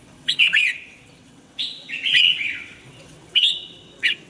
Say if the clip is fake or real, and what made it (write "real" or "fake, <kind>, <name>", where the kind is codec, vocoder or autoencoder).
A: fake, vocoder, WaveNeXt